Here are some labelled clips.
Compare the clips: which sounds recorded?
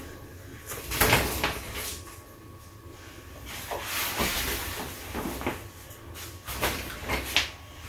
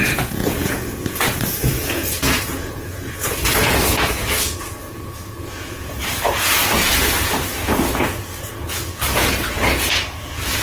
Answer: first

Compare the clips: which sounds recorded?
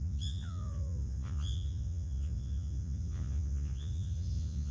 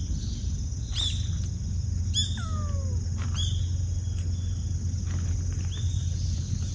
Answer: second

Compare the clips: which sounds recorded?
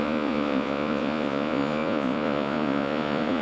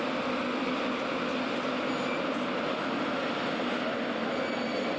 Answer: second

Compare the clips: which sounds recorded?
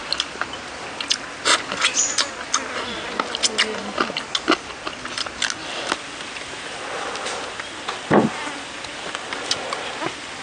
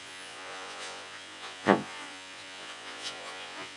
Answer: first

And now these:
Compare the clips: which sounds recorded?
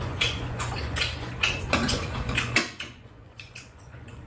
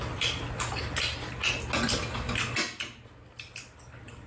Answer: second